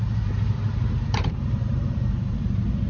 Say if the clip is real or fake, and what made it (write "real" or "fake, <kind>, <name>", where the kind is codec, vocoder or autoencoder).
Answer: fake, vocoder, BigVGAN v2